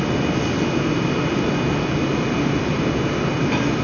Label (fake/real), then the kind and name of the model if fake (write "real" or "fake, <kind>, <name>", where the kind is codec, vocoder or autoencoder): real